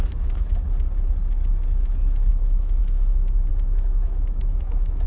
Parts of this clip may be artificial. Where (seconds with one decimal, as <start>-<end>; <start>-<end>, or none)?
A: 0.0-0.5; 2.3-2.8; 3.5-5.1